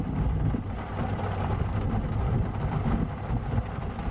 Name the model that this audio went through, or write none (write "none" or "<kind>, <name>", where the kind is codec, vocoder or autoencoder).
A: none